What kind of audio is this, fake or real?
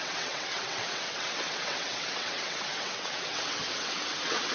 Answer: fake